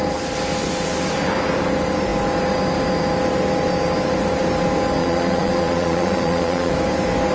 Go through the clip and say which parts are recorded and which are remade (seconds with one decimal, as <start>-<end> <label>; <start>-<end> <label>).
0.0-5.0 recorded; 5.0-6.7 remade; 6.7-7.3 recorded